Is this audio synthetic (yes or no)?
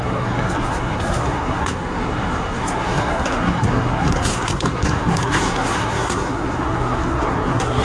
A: yes